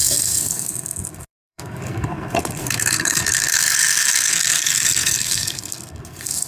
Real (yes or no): no